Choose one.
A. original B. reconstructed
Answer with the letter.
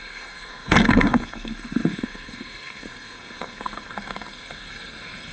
B